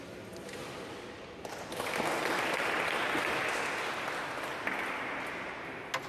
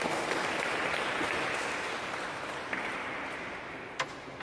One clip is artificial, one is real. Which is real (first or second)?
first